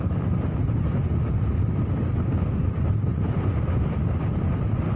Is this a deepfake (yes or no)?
no